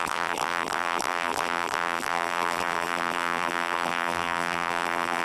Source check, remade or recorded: remade